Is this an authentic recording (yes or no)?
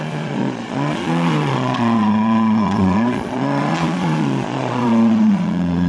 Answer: no